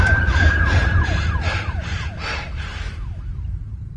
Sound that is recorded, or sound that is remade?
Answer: remade